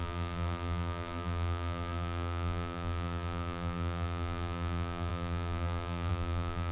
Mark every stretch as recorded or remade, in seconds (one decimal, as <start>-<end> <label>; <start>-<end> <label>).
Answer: 0.0-6.7 remade